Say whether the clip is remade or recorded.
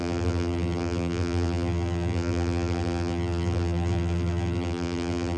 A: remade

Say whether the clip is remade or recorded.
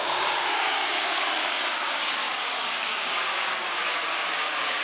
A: remade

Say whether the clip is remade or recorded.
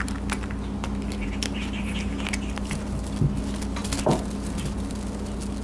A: recorded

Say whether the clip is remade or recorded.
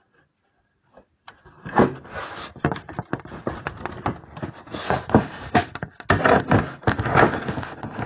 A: recorded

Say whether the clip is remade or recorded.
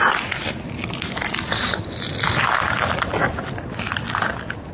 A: recorded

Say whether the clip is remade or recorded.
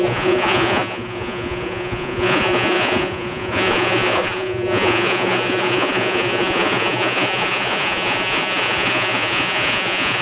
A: remade